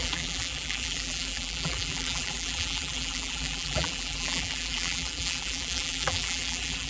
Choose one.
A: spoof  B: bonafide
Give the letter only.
A